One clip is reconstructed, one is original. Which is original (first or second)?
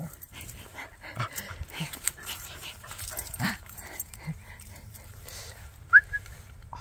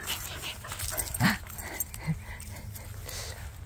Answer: second